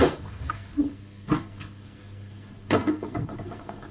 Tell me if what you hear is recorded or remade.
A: remade